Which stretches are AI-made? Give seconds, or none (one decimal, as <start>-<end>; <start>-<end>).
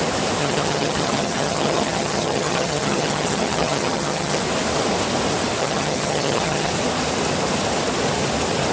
0.4-4.4; 5.6-6.7